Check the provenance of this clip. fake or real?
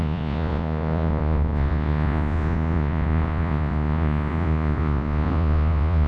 fake